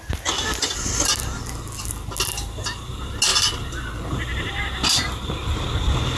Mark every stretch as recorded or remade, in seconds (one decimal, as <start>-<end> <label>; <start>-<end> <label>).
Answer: 0.0-6.2 recorded